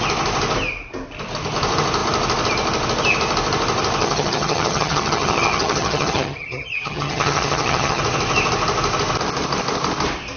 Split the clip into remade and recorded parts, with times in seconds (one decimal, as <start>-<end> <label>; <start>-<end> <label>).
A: 0.0-4.0 recorded; 4.0-8.0 remade; 8.0-10.4 recorded